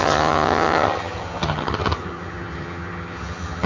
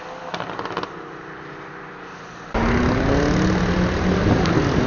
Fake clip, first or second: first